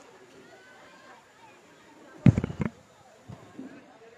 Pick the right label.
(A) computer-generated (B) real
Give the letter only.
A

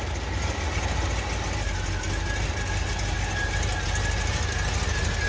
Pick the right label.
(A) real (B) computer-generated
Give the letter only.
A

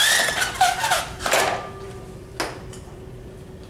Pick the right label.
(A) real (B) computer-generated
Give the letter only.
A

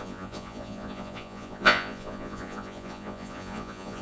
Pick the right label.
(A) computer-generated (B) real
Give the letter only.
A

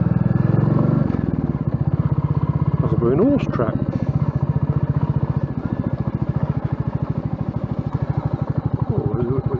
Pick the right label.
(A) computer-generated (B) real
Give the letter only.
B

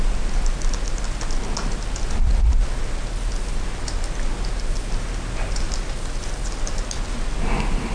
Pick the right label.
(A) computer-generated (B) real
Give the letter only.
B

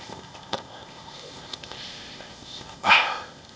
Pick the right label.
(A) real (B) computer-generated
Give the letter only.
B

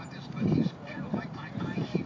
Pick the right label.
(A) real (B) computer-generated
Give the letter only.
A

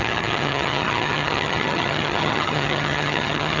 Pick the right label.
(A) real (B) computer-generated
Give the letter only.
B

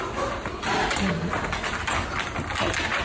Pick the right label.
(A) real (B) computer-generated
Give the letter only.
A